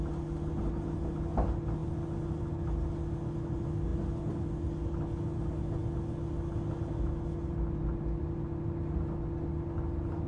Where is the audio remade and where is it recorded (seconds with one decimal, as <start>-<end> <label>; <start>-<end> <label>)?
0.0-10.3 recorded